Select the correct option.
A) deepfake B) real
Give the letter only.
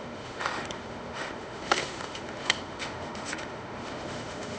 A